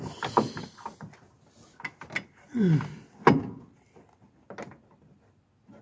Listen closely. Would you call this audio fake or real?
real